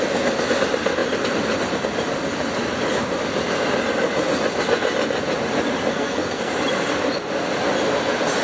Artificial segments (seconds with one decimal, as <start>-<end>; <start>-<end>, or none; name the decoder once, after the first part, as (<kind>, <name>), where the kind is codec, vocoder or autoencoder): 5.9-6.5 (codec, SNAC)